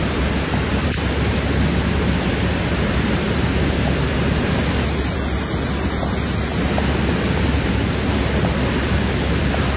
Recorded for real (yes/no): yes